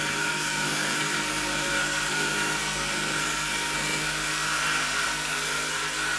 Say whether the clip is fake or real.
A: fake